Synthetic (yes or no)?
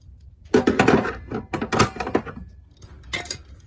no